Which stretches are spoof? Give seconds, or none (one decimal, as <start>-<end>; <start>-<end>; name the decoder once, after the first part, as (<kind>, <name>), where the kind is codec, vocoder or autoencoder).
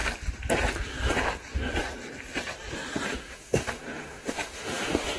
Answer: 3.1-5.2 (autoencoder, DAC-VAE)